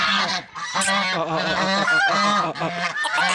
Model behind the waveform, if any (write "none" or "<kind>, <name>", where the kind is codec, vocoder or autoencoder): none